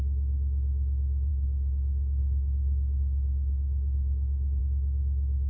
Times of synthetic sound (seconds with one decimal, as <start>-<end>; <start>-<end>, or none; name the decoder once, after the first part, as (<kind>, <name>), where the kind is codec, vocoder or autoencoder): 1.3-4.6 (codec, HILCodec)